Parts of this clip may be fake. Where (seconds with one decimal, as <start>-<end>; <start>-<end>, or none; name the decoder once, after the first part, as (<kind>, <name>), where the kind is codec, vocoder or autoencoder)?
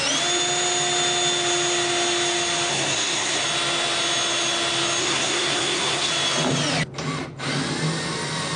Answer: 2.7-3.4 (codec, SNAC); 5.0-6.1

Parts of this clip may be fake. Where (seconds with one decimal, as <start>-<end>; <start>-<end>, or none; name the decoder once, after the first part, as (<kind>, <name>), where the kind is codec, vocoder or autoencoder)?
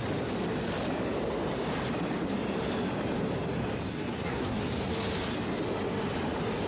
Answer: 3.9-4.6 (codec, SNAC)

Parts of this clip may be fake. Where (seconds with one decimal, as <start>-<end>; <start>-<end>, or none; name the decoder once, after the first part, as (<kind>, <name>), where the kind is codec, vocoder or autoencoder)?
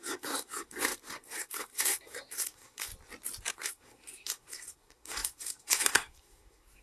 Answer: 0.0-2.9 (codec, SNAC); 3.5-6.8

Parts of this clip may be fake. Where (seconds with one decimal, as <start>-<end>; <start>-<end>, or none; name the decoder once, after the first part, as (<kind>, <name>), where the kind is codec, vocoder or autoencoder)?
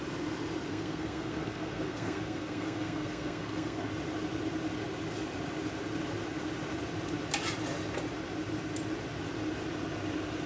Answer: 0.7-3.9 (codec, SNAC)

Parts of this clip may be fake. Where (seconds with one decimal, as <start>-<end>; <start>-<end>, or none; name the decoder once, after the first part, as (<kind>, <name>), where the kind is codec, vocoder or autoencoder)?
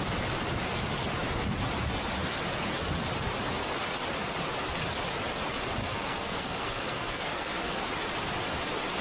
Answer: 5.8-7.8 (codec, SNAC)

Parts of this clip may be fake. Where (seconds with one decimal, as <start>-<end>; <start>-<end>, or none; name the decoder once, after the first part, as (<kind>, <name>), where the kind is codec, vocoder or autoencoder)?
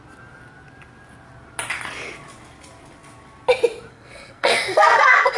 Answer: 3.9-5.4 (codec, SNAC)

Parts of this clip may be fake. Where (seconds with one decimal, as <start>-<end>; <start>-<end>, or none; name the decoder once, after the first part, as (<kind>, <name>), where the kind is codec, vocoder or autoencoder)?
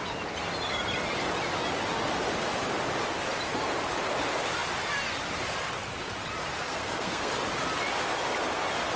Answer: 6.7-7.3 (codec, SNAC)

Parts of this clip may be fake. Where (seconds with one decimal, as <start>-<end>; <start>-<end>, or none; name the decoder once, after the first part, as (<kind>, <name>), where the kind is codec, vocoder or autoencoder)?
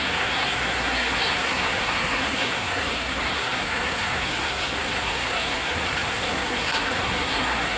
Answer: 0.0-7.8 (codec, SNAC)